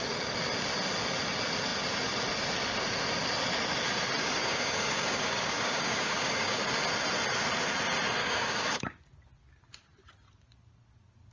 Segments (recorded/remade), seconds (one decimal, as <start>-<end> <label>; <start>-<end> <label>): 0.0-4.2 recorded; 4.2-6.6 remade; 6.6-8.2 recorded; 8.2-8.8 remade; 8.8-11.3 recorded